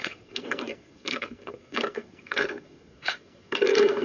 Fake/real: fake